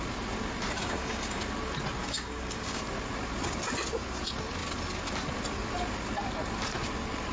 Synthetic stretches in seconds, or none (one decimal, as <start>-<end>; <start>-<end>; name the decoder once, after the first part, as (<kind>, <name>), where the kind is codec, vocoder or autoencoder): 0.8-1.4 (codec, DAC); 2.0-2.8